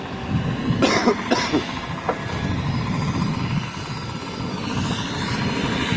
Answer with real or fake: real